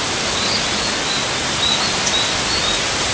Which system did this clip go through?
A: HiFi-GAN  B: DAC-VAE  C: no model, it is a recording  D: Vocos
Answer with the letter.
C